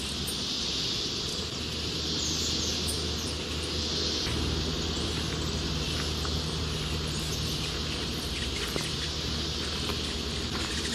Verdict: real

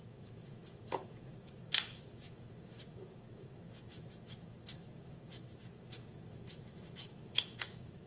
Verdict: fake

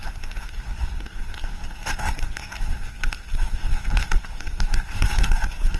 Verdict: fake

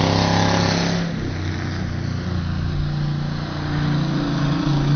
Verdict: real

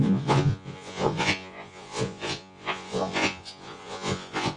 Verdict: fake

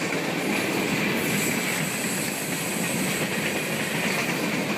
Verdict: real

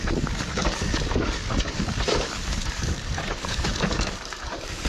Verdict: fake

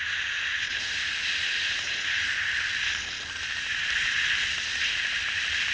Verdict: real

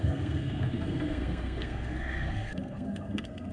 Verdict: fake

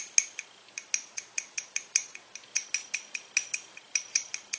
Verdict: real